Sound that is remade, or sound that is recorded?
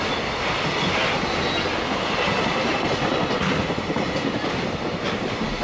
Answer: recorded